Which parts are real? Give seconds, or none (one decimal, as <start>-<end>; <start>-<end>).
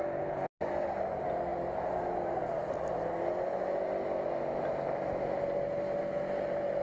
0.0-6.8